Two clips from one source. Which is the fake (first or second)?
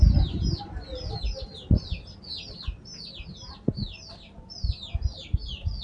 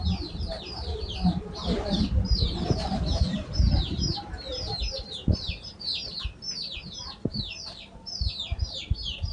second